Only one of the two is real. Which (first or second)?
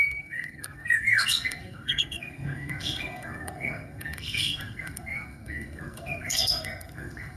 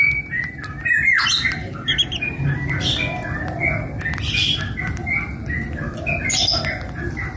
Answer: second